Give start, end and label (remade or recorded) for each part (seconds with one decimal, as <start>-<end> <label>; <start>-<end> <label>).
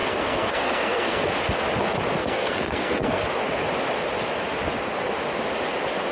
0.0-1.2 remade; 1.2-2.2 recorded; 2.2-3.2 remade; 3.2-6.1 recorded